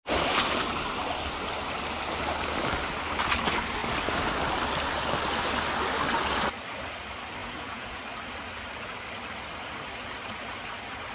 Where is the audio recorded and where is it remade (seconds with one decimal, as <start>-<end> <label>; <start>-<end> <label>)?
0.0-7.4 recorded; 7.4-8.0 remade; 8.0-11.1 recorded